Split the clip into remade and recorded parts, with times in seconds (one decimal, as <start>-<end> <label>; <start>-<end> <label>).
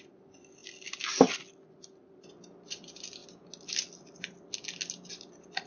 0.0-5.7 recorded